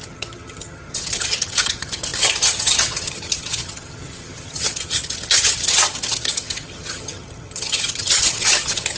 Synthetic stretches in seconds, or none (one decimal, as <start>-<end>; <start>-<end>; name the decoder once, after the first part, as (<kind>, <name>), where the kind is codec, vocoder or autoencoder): 0.0-9.0 (vocoder, HiFi-GAN)